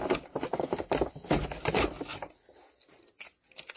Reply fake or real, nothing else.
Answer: real